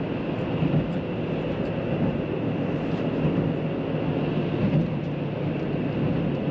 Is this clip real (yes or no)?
yes